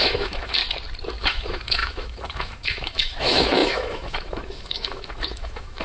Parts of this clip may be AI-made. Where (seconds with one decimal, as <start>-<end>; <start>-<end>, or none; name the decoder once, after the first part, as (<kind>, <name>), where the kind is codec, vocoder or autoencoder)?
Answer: 0.0-0.6 (autoencoder, DAC-VAE); 1.2-5.8

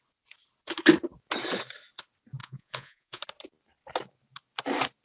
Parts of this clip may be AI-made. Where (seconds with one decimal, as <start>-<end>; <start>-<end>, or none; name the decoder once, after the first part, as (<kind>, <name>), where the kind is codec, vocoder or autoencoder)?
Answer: 2.4-3.2 (vocoder, Vocos)